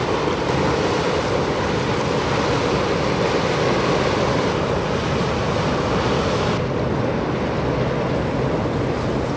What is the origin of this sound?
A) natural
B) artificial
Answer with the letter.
A